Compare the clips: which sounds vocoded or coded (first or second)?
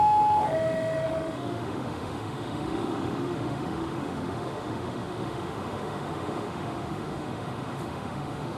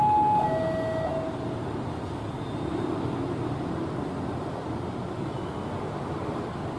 first